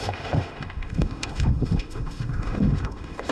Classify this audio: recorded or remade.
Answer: remade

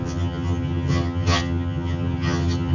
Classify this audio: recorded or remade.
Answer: remade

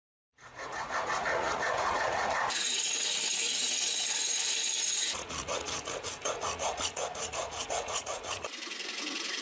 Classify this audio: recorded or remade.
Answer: remade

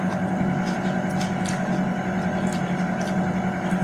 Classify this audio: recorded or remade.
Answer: remade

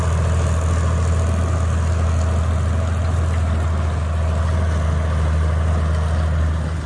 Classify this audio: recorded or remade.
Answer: recorded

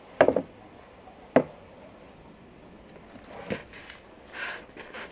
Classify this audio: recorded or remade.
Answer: recorded